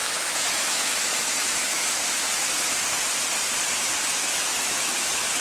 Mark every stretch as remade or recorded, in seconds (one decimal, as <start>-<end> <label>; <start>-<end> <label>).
0.0-2.0 remade; 2.0-3.7 recorded; 3.7-5.4 remade